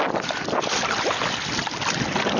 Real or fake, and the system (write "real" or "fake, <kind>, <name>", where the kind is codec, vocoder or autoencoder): real